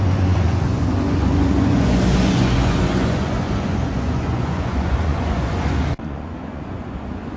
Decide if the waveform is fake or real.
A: fake